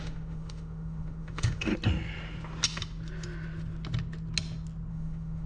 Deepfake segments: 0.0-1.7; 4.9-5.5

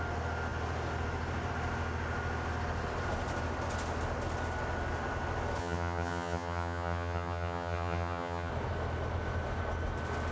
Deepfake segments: 5.6-8.5

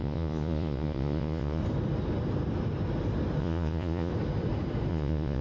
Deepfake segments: 0.0-1.6; 3.4-4.1; 4.9-5.4

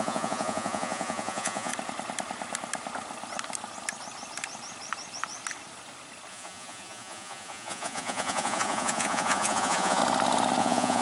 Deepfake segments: 0.0-1.7; 6.3-10.0; 10.6-11.0

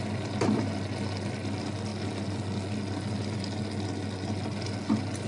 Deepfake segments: none

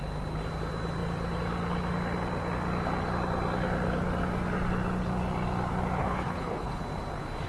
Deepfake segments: 6.0-6.8